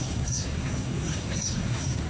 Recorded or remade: remade